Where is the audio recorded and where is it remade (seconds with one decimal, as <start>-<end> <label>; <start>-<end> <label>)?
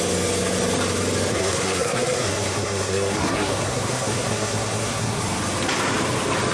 0.0-1.3 recorded; 1.3-5.2 remade; 5.2-6.5 recorded